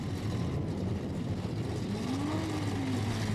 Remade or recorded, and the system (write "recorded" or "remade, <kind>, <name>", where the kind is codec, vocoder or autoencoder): recorded